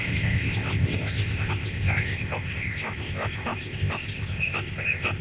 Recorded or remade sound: remade